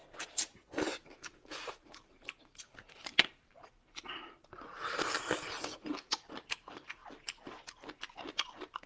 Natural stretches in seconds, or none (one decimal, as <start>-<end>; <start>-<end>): 7.0-8.3

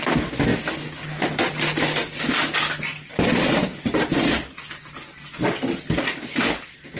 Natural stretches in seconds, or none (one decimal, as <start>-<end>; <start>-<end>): 0.0-7.0

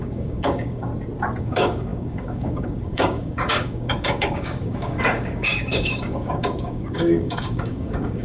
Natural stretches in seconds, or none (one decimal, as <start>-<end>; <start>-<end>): 0.9-1.4

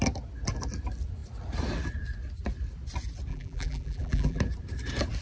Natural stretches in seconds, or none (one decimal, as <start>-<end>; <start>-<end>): 0.0-3.3; 4.4-5.2

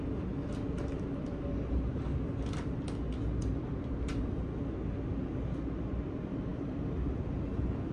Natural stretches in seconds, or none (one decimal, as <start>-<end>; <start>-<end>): 0.0-7.9